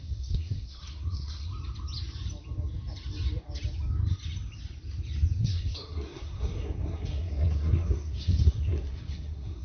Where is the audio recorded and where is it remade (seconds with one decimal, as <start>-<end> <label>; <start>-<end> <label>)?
0.0-1.5 remade; 1.5-5.4 recorded; 5.4-9.6 remade

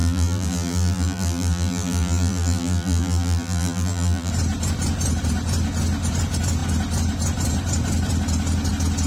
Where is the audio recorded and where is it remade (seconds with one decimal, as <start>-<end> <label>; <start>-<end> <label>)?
0.0-4.3 remade; 4.3-9.1 recorded